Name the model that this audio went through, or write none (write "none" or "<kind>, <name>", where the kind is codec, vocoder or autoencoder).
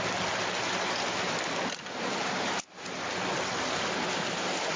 none